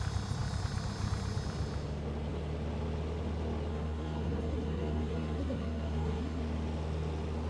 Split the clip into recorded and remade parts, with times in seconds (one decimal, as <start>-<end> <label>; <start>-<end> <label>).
0.0-3.7 recorded; 3.7-6.4 remade; 6.4-7.5 recorded